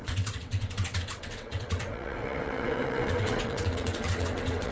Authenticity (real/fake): fake